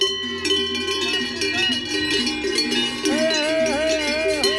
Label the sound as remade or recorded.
recorded